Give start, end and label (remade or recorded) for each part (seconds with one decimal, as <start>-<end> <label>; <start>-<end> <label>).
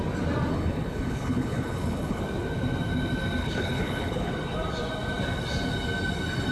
0.0-0.5 recorded; 0.5-2.2 remade; 2.2-3.4 recorded; 3.4-4.3 remade; 4.3-6.5 recorded